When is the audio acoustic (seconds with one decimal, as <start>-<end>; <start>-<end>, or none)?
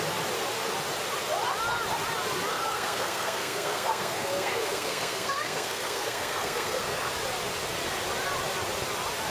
0.0-2.5; 7.1-9.3